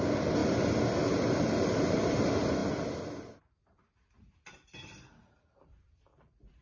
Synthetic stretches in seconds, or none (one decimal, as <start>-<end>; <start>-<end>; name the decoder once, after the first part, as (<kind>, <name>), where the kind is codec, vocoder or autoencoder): none